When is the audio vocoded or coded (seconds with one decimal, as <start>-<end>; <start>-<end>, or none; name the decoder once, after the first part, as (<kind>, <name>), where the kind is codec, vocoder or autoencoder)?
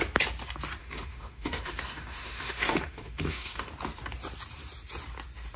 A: 0.8-3.7 (autoencoder, DAC-VAE)